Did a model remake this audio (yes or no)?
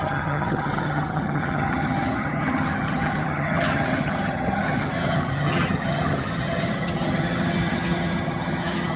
yes